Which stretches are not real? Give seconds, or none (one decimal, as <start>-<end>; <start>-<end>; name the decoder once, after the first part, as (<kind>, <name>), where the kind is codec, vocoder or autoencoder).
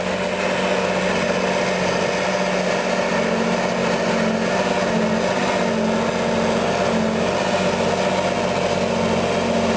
none